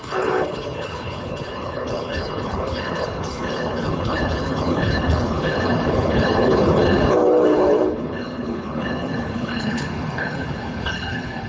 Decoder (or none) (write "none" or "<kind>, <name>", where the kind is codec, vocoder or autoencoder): codec, HILCodec